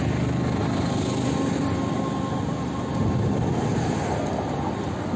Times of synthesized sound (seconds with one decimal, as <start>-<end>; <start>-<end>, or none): none